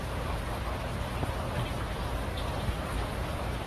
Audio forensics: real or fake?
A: fake